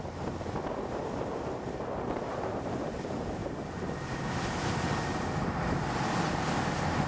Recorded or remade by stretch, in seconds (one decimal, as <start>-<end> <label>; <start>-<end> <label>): 0.0-7.1 recorded